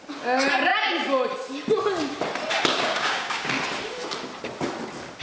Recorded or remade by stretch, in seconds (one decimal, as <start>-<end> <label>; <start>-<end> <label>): 0.0-2.7 recorded; 2.7-3.5 remade; 3.5-5.2 recorded